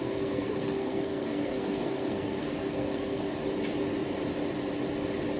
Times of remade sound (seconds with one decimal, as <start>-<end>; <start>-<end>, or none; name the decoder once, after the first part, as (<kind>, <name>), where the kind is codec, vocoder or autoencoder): 0.0-3.2 (codec, SNAC)